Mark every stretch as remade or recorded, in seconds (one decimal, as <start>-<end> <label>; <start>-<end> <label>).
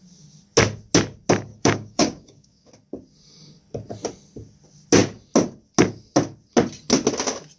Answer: 0.0-1.5 recorded; 1.5-2.7 remade; 2.7-7.6 recorded